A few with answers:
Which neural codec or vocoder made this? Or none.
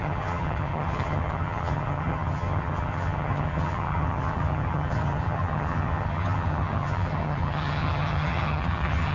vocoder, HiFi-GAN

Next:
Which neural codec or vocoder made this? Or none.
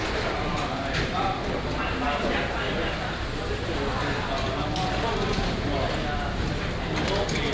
none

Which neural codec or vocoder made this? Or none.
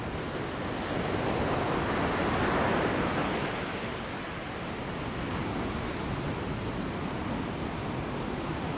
none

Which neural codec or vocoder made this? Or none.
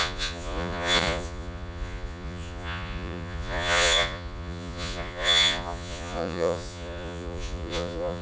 vocoder, Vocos